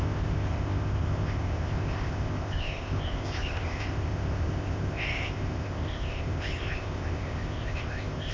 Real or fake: fake